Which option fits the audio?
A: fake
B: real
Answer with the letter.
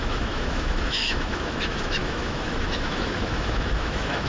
A